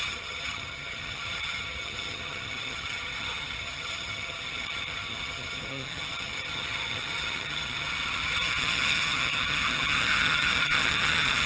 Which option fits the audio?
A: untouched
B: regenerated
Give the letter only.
B